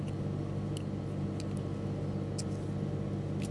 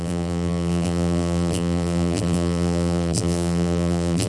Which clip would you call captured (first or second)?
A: first